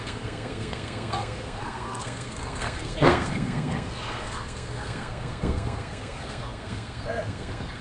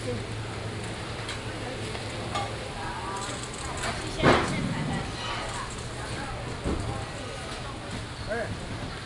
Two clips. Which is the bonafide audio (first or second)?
second